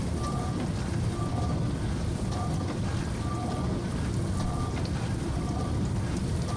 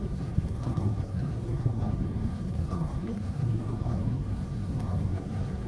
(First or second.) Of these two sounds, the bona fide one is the first